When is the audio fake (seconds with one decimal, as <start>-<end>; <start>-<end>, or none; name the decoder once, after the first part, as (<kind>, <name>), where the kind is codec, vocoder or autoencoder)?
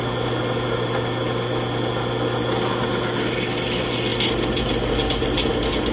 none